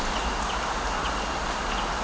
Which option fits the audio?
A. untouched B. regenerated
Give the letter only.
A